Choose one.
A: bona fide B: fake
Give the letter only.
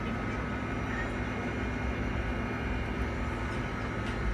A